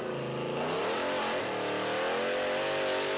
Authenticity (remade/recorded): recorded